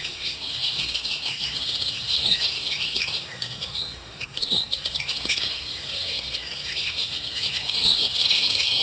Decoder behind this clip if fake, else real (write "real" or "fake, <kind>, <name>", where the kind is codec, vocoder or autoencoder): fake, codec, SNAC